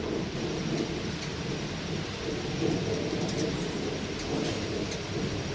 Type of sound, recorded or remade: recorded